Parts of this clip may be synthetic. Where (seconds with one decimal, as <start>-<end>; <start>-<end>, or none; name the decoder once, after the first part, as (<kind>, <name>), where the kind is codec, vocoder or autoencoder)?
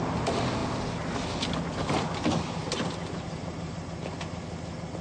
2.6-4.0 (vocoder, BigVGAN v2)